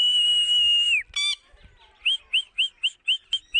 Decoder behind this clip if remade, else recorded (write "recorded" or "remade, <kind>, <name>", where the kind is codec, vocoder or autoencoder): recorded